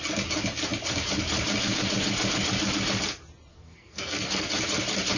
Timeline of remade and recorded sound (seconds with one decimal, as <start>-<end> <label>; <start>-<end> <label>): 0.0-3.5 recorded; 3.5-4.5 remade; 4.5-5.2 recorded